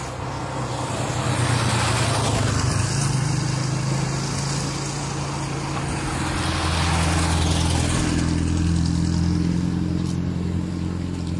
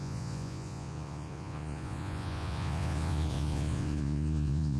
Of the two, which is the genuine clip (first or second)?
first